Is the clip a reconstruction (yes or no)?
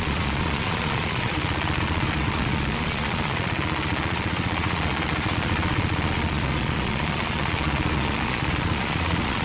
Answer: yes